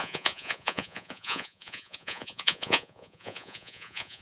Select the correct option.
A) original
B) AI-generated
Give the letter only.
B